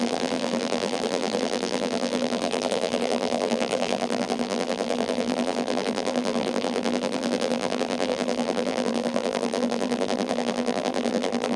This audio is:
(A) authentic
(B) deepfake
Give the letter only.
B